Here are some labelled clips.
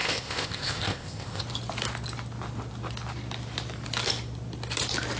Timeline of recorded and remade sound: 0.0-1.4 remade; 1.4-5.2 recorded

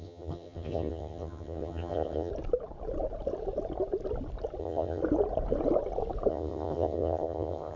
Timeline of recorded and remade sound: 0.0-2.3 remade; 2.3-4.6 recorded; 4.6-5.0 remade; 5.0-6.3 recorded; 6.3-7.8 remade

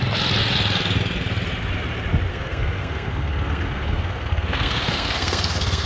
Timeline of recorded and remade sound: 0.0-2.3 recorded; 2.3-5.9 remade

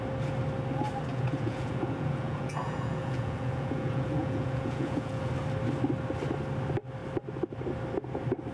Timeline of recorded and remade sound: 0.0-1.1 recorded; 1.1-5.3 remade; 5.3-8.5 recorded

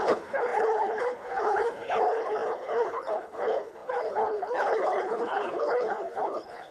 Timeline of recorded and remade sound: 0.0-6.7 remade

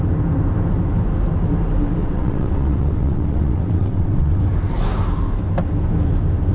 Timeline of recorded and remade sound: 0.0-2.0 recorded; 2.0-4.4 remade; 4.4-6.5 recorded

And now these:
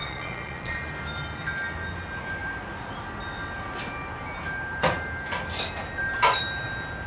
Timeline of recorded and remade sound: 0.0-0.9 remade; 0.9-7.1 recorded